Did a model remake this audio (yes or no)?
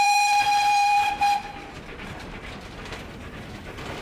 yes